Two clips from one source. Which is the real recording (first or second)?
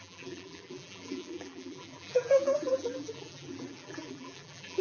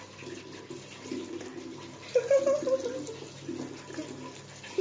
second